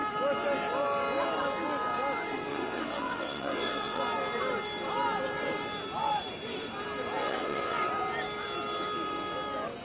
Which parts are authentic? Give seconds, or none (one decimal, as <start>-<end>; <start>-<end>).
0.0-2.5; 4.0-7.2; 7.9-9.8